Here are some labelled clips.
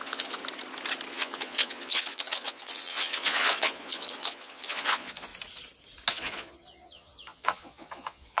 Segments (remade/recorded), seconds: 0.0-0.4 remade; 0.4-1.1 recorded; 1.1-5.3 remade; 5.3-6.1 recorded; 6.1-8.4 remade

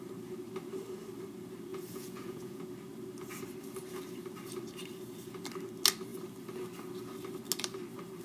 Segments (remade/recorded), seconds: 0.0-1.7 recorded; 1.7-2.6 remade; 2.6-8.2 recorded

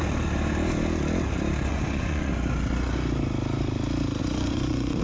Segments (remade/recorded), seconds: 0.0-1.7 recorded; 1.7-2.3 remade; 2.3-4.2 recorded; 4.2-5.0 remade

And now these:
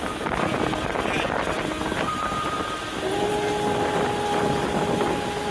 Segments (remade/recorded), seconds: 0.0-5.5 recorded

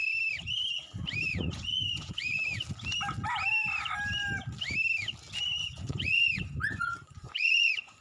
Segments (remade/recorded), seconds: 0.0-1.3 recorded; 1.3-2.4 remade; 2.4-5.6 recorded; 5.6-8.0 remade

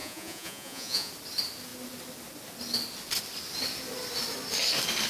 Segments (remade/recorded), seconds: 0.0-1.1 remade; 1.1-5.1 recorded

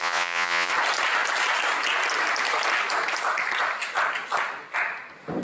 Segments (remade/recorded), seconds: 0.0-0.7 remade; 0.7-5.4 recorded

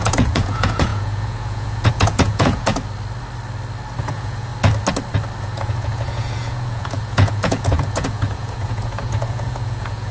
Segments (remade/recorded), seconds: 0.0-2.7 remade; 2.7-4.0 recorded; 4.0-4.5 remade; 4.5-5.4 recorded; 5.4-10.1 remade